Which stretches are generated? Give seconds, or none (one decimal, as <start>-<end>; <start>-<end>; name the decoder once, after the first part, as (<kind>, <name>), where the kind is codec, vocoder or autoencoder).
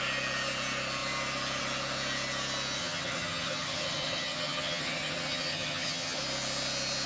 2.8-6.2 (vocoder, HiFi-GAN)